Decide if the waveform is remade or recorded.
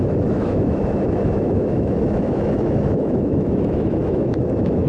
remade